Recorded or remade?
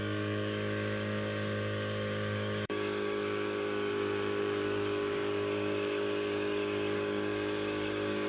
remade